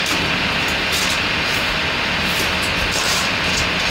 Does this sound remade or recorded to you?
recorded